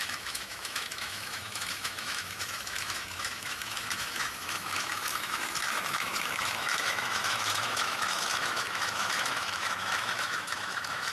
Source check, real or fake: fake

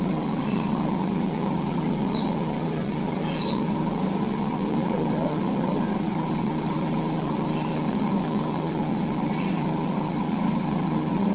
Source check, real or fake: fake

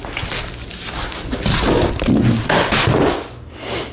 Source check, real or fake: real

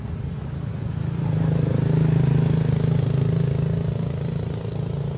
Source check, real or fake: real